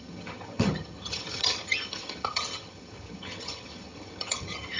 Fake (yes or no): yes